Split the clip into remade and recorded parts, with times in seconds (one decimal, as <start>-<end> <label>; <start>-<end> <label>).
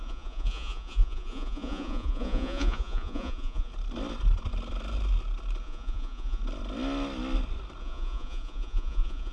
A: 0.0-3.7 remade; 3.7-5.6 recorded; 5.6-6.4 remade; 6.4-7.8 recorded; 7.8-9.3 remade